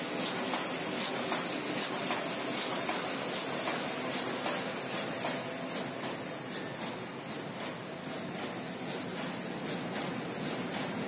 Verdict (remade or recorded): recorded